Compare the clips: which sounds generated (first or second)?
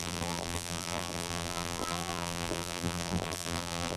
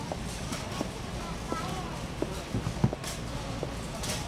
first